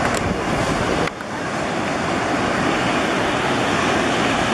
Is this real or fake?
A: real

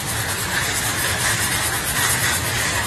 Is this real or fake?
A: real